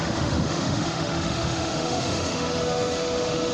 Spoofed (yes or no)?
yes